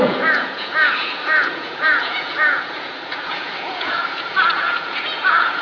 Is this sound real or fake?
fake